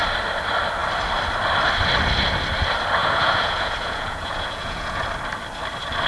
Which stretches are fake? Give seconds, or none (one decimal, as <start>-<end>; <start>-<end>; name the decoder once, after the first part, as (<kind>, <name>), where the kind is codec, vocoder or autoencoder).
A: 3.0-5.0 (vocoder, Vocos)